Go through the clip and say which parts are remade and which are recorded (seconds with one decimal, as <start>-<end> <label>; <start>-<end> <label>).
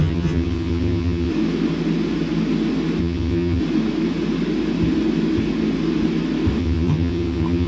0.0-1.3 remade; 1.3-3.0 recorded; 3.0-3.6 remade; 3.6-6.6 recorded; 6.6-7.7 remade